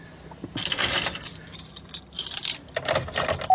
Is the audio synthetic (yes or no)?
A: no